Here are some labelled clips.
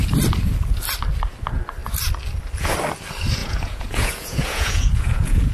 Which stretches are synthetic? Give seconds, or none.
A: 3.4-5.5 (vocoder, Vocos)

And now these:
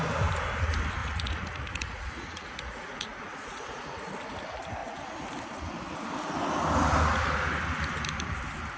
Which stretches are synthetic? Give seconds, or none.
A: 1.0-4.1 (vocoder, Vocos)

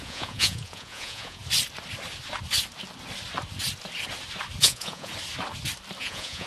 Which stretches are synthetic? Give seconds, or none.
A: 0.0-1.4 (vocoder, Vocos); 4.6-5.1; 6.0-6.5

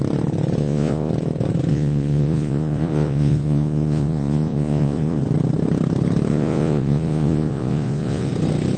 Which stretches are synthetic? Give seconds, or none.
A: 0.6-1.1 (vocoder, Vocos); 1.7-5.2; 6.3-8.3

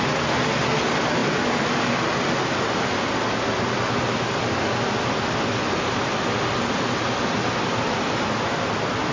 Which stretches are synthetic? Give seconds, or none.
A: none

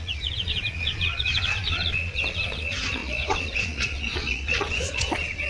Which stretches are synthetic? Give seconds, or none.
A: 0.0-5.5 (vocoder, Vocos)

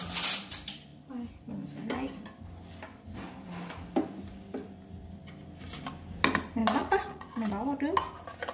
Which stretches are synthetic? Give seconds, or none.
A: 6.6-7.5 (vocoder, Vocos)

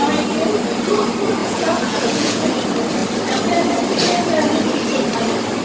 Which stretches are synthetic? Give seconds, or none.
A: 1.4-2.5 (vocoder, Vocos)